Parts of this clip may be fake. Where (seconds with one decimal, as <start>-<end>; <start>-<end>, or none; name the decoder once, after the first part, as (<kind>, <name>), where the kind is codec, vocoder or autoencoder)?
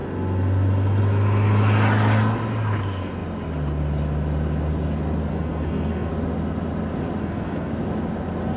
5.3-6.1 (codec, SNAC); 7.2-7.7